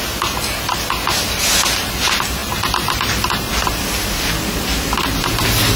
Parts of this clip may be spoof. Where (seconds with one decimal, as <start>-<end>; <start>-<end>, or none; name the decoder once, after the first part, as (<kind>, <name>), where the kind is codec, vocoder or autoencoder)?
none